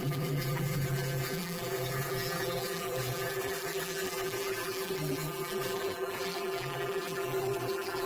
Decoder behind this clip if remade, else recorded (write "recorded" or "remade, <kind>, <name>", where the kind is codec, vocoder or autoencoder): remade, vocoder, BigVGAN v2